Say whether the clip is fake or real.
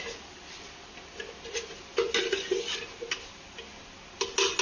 real